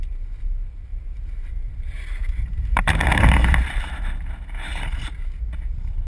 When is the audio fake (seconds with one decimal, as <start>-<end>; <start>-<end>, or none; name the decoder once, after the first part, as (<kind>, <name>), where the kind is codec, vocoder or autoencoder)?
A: 0.9-1.7 (vocoder, BigVGAN v2); 2.2-5.0